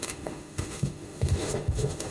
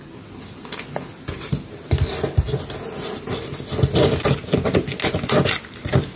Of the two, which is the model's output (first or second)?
first